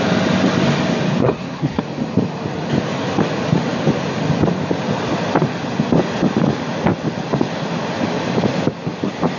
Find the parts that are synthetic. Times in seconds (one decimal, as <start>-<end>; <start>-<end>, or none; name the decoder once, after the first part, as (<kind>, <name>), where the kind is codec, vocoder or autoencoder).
1.2-1.8 (codec, SNAC)